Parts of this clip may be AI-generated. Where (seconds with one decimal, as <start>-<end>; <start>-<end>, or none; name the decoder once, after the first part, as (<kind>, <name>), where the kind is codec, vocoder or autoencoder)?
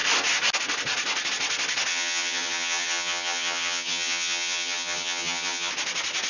1.9-5.7 (vocoder, HiFi-GAN)